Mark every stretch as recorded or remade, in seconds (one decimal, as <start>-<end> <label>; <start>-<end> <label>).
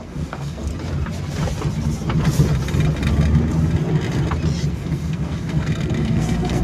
0.0-0.7 remade; 0.7-4.7 recorded; 4.7-6.6 remade